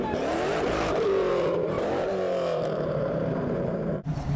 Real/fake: fake